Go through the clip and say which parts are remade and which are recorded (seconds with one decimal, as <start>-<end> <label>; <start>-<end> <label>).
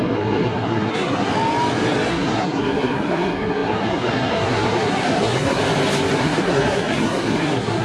0.0-1.3 remade; 1.3-2.1 recorded; 2.1-5.6 remade; 5.6-6.2 recorded; 6.2-7.8 remade